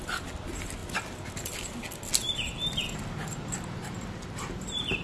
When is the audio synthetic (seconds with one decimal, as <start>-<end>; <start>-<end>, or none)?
none